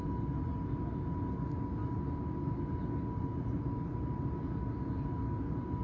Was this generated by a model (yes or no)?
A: no